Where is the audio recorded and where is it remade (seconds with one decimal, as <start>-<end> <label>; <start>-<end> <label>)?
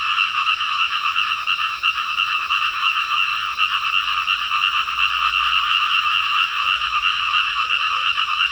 0.0-3.3 remade; 3.3-5.6 recorded; 5.6-8.5 remade